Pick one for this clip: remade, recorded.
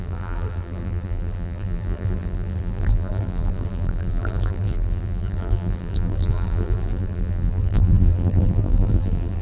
remade